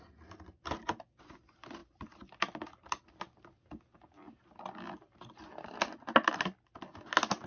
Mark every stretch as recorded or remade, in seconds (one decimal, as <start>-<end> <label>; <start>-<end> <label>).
0.0-7.5 recorded

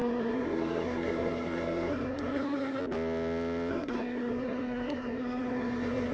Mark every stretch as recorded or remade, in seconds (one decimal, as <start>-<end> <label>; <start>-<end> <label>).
0.0-2.8 remade; 2.8-3.7 recorded; 3.7-6.1 remade

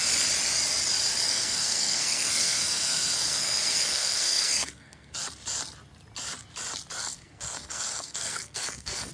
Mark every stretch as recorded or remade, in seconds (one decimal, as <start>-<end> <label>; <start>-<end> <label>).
0.0-1.3 recorded; 1.3-5.2 remade; 5.2-7.0 recorded; 7.0-9.1 remade

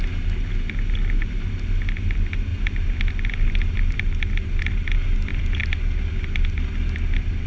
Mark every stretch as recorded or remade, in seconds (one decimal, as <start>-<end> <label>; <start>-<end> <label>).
0.0-7.5 recorded

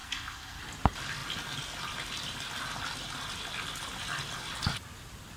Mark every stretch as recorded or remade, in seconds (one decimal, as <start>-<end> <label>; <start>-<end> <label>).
0.0-0.6 remade; 0.6-5.4 recorded